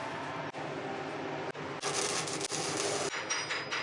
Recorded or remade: recorded